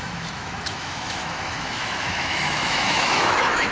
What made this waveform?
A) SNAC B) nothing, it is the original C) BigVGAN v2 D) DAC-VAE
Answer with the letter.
D